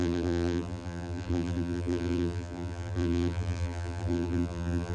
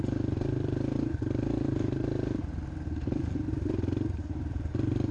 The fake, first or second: first